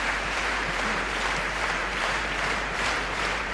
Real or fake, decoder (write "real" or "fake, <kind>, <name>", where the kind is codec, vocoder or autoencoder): fake, vocoder, BigVGAN v2